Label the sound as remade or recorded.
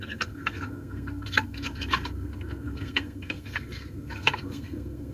remade